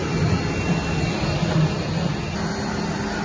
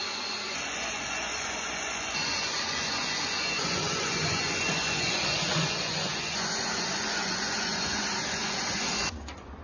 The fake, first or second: second